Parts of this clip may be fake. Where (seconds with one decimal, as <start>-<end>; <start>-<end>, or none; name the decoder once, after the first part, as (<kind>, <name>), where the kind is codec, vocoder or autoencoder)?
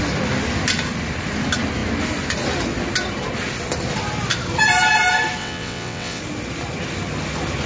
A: 5.4-6.2 (vocoder, WaveNeXt)